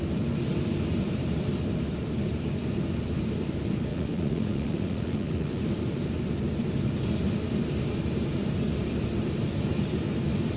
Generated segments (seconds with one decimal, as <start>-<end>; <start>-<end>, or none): 3.9-5.6